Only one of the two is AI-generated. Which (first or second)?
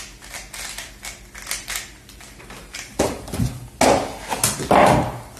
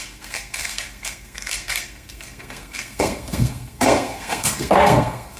second